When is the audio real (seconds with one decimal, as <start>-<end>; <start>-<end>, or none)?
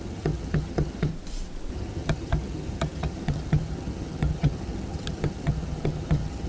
1.1-1.7